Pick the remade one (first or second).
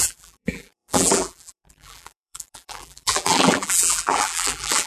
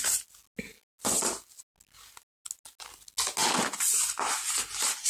first